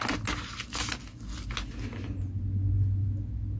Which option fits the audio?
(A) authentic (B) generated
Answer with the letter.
A